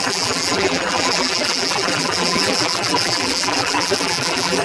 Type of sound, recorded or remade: remade